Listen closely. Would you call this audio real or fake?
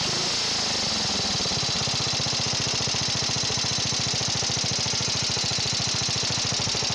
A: real